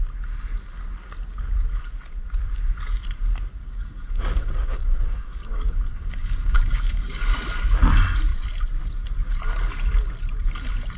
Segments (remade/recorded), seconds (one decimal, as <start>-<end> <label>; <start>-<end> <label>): 0.0-3.6 recorded; 3.6-7.2 remade; 7.2-11.0 recorded